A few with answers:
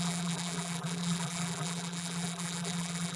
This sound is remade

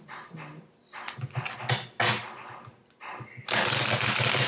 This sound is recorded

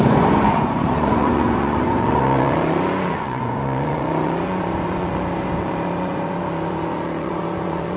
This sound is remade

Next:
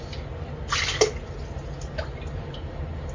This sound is recorded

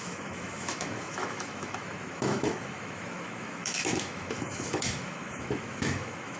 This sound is remade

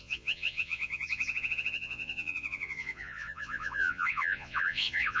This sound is remade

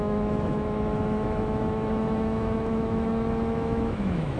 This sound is remade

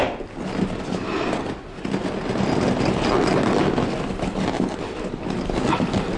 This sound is recorded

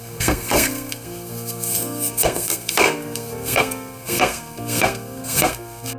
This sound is remade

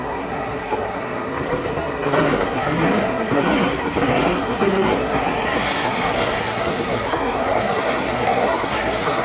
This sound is remade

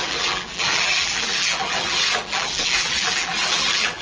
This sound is remade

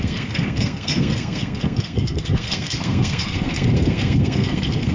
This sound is remade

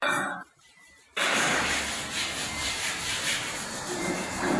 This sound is remade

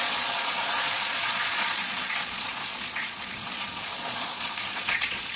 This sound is remade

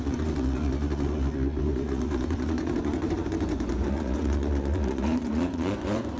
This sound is remade